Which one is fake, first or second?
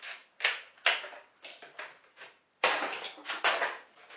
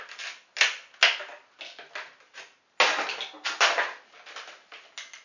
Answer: first